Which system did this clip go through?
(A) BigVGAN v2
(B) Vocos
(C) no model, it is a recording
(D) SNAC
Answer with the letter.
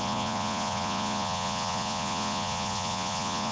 B